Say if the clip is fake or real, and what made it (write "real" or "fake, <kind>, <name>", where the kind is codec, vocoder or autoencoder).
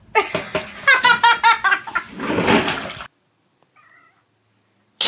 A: real